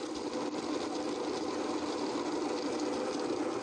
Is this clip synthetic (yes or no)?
no